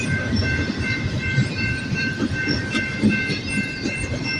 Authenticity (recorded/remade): remade